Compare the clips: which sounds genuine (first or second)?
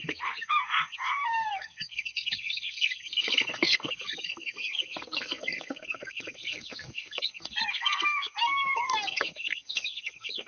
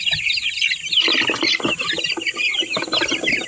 second